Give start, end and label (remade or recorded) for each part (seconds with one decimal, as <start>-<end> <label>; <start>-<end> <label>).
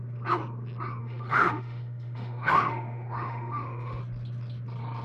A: 0.0-1.0 recorded; 1.0-4.0 remade; 4.0-5.0 recorded